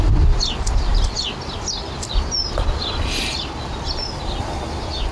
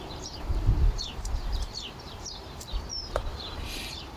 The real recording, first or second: first